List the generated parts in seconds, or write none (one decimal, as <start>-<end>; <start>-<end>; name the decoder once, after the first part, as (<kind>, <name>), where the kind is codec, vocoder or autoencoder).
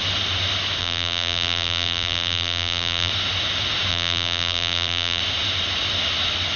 0.8-3.1 (vocoder, BigVGAN v2); 3.9-5.2